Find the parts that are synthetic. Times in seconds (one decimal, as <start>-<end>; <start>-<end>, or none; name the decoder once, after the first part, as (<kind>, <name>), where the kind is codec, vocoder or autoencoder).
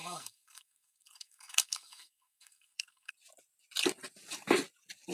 0.0-3.1 (codec, SNAC)